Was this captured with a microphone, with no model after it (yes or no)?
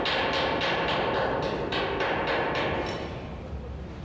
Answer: yes